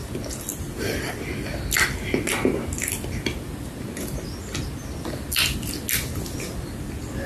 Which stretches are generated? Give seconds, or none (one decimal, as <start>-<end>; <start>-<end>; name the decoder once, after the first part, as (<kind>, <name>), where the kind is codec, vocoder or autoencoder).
none